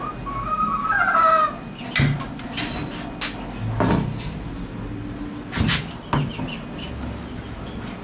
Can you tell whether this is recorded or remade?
recorded